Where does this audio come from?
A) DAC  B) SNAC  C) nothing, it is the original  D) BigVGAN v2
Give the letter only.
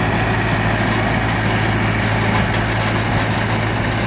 C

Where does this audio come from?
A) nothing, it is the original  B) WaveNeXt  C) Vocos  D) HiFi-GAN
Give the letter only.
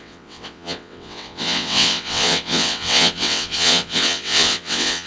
B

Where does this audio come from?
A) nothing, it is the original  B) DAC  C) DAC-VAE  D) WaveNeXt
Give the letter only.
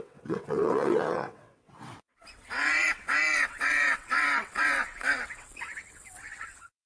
D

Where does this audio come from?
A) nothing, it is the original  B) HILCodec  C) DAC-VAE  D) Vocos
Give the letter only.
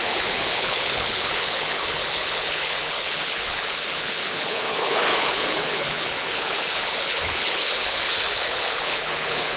B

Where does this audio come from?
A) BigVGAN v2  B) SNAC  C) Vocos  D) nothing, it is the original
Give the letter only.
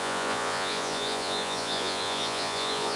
C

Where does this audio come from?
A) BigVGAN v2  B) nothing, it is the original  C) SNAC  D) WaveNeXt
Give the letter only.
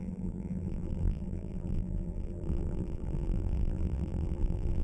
A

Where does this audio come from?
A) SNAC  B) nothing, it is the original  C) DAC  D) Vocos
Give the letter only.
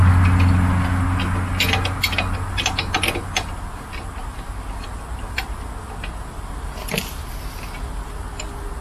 B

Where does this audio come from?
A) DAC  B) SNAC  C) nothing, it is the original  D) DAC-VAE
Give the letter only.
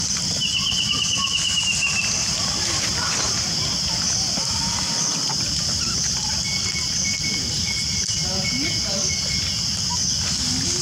C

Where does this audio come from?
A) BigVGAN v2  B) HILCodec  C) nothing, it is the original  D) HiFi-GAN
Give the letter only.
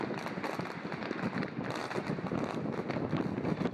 C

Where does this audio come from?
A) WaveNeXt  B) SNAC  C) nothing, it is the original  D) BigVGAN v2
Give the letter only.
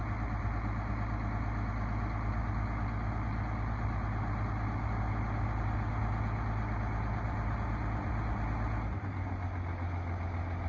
C